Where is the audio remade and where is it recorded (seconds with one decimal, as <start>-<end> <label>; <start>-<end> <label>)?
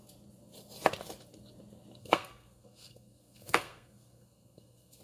0.0-2.0 recorded; 2.0-5.0 remade